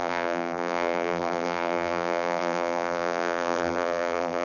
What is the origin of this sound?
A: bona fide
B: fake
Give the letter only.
B